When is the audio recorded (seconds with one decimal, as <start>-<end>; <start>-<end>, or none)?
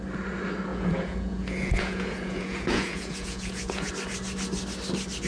0.0-0.7; 3.9-5.3